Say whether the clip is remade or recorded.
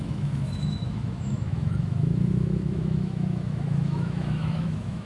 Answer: remade